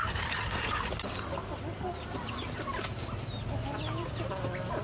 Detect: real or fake real